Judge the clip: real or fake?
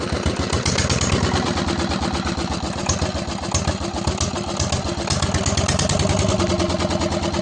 real